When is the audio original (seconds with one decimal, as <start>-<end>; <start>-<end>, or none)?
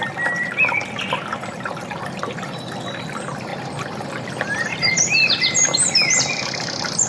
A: 0.0-7.1